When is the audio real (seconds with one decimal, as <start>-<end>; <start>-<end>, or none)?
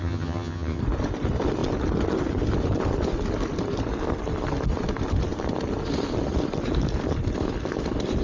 0.8-8.2